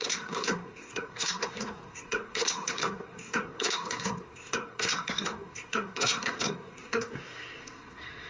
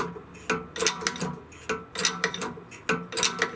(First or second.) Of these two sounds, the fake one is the first